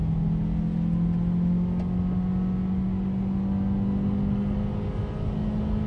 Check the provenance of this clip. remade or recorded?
recorded